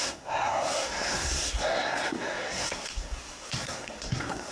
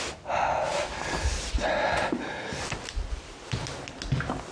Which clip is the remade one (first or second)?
first